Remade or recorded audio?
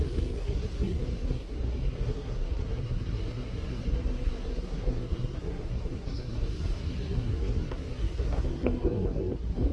remade